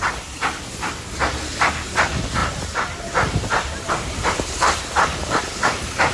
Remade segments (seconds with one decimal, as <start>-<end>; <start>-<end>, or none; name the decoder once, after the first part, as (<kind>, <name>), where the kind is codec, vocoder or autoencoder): 2.4-5.4 (vocoder, BigVGAN v2)

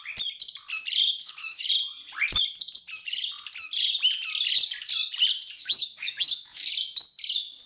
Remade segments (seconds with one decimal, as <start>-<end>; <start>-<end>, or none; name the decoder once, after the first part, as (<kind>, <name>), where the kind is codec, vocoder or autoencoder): 1.2-1.7 (autoencoder, DAC-VAE); 5.6-6.7

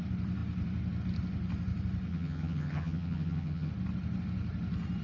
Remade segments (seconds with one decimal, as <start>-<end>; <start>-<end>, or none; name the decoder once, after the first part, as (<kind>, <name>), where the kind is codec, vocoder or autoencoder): 2.1-3.7 (vocoder, HiFi-GAN)

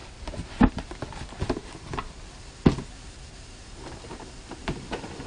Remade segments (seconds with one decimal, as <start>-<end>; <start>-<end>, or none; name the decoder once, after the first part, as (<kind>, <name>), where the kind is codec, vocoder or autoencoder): none

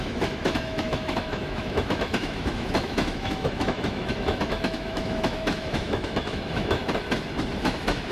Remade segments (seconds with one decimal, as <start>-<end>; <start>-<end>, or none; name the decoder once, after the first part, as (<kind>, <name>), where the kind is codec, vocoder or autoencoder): 0.0-6.8 (autoencoder, DAC-VAE); 7.6-8.1

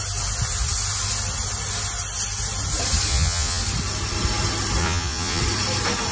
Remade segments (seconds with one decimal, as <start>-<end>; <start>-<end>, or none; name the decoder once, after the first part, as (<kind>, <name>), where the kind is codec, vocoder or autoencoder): 3.1-3.6 (vocoder, Vocos); 4.8-5.4

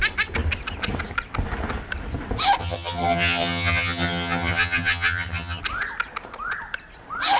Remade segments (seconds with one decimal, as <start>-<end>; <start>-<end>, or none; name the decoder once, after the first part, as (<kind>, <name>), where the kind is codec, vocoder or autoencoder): 2.6-5.6 (vocoder, HiFi-GAN)

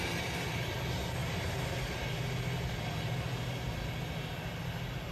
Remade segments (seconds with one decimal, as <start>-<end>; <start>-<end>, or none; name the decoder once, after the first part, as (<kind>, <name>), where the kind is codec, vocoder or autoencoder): none